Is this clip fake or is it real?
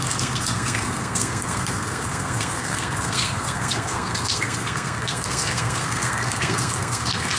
fake